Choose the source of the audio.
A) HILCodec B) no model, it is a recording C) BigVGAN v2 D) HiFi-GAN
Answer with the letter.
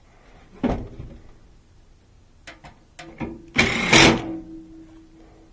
B